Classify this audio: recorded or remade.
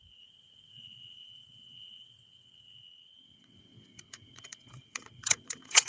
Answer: remade